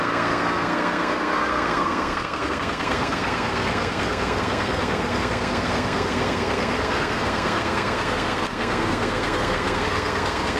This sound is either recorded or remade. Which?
remade